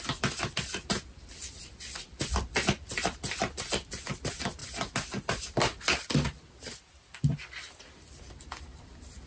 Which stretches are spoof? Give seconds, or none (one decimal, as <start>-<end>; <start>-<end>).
none